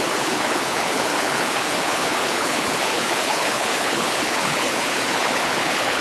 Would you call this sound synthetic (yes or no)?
yes